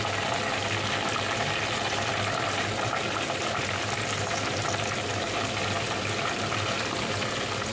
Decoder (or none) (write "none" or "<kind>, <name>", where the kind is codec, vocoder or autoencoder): none